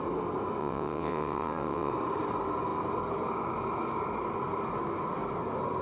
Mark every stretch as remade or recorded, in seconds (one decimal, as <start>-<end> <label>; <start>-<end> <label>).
0.0-0.6 recorded; 0.6-1.9 remade; 1.9-5.8 recorded